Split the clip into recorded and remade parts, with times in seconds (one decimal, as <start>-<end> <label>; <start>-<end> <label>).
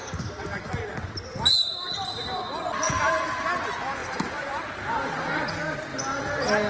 0.0-0.7 remade; 0.7-4.0 recorded; 4.0-5.5 remade; 5.5-5.9 recorded; 5.9-6.7 remade